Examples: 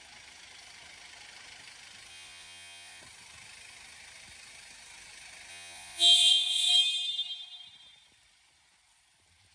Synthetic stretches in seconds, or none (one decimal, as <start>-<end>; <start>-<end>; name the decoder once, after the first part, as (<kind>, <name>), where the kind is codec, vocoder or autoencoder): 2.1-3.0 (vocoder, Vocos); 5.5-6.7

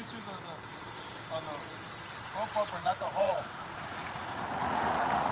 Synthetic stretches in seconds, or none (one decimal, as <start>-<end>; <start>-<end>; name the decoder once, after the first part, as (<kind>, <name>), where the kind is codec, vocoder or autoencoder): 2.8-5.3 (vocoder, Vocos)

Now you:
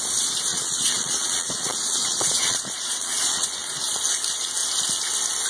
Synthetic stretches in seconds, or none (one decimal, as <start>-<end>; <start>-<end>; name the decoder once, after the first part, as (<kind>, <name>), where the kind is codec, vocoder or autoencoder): 0.5-3.8 (vocoder, Vocos)

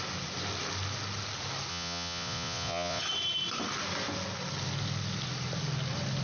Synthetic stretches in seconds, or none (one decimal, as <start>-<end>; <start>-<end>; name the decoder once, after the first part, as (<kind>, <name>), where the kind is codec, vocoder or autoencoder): 1.7-3.0 (vocoder, Vocos)